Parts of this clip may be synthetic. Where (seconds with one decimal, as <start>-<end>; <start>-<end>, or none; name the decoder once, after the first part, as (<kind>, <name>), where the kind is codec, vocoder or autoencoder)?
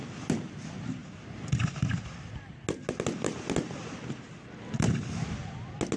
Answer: none